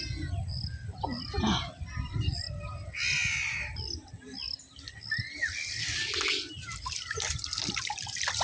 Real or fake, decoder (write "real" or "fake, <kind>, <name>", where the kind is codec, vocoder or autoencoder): fake, vocoder, BigVGAN v2